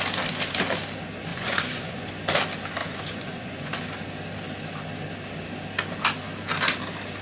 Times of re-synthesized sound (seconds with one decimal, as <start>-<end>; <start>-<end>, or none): 1.3-2.1; 2.8-3.7